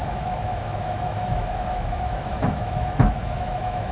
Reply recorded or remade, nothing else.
remade